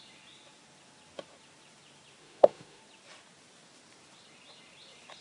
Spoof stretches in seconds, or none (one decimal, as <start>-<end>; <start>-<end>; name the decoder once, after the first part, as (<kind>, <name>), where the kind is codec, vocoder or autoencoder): 2.2-2.8 (autoencoder, DAC-VAE)